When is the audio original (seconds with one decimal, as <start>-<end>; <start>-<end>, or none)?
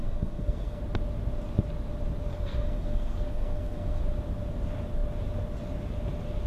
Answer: 0.8-2.3; 4.0-6.5